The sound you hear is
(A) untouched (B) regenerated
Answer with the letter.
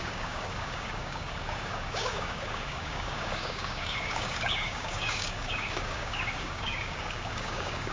B